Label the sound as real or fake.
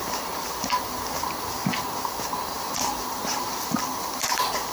real